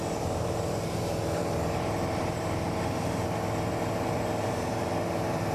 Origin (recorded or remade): remade